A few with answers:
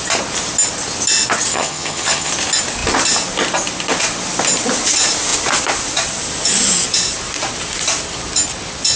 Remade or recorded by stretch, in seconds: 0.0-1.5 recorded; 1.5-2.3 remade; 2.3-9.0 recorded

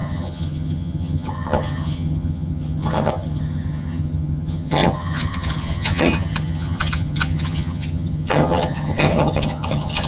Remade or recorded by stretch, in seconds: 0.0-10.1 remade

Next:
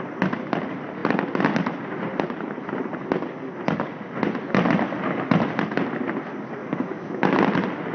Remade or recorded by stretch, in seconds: 0.0-6.6 recorded; 6.6-7.4 remade; 7.4-7.9 recorded